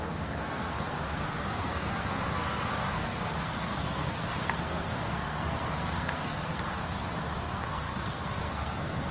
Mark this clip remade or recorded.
remade